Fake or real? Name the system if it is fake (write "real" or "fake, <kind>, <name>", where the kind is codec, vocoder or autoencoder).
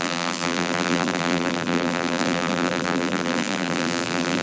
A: fake, vocoder, BigVGAN v2